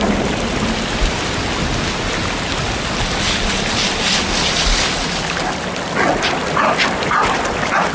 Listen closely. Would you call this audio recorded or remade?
recorded